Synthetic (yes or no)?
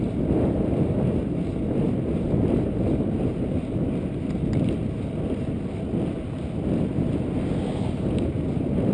no